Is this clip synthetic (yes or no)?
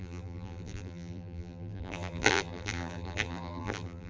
yes